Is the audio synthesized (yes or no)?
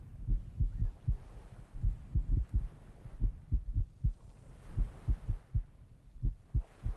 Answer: no